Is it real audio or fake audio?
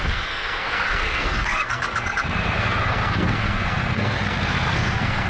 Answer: fake